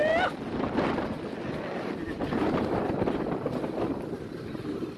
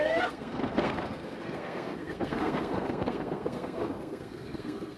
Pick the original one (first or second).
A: first